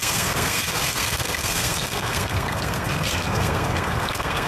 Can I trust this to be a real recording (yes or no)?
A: no